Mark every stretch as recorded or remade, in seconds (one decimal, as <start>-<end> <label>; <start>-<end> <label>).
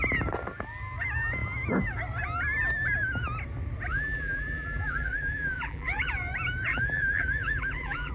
0.0-3.9 recorded; 3.9-6.1 remade; 6.1-6.7 recorded; 6.7-8.1 remade